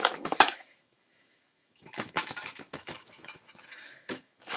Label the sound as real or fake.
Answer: fake